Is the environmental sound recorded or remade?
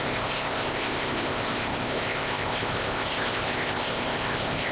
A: remade